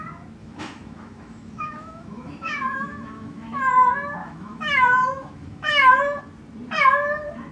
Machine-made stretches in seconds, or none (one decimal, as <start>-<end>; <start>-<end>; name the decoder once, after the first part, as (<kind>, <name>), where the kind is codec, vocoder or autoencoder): 0.4-3.7 (autoencoder, DAC-VAE); 4.2-6.2